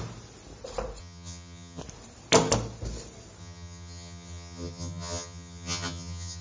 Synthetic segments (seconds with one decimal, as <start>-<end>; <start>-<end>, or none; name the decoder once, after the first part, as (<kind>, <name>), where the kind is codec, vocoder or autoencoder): 1.0-1.8 (vocoder, HiFi-GAN); 3.4-6.4